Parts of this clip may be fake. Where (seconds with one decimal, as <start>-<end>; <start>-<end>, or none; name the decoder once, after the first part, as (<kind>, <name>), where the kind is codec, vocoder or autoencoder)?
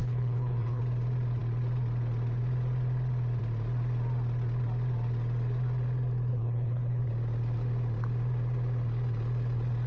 0.0-0.8 (codec, HILCodec); 6.3-7.0